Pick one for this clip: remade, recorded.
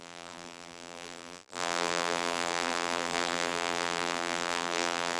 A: remade